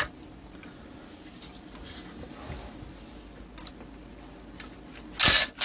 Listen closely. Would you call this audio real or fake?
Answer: real